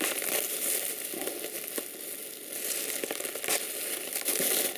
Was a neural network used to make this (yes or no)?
no